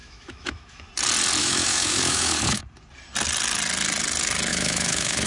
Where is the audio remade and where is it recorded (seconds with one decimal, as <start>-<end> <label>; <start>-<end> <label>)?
0.0-0.9 remade; 0.9-1.4 recorded; 1.4-2.6 remade; 2.6-4.5 recorded; 4.5-5.3 remade